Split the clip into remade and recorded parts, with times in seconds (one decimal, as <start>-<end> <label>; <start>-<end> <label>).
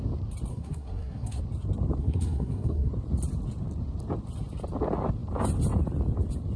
0.0-0.5 recorded; 0.5-1.4 remade; 1.4-2.0 recorded; 2.0-2.9 remade; 2.9-6.6 recorded